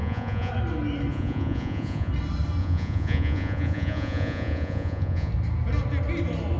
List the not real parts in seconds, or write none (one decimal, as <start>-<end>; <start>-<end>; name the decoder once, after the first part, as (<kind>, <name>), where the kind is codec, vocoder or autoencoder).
0.0-0.5 (vocoder, Vocos); 1.1-2.1; 2.6-5.3